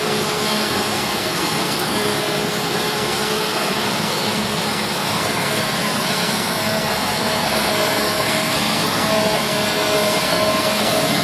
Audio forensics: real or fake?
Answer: fake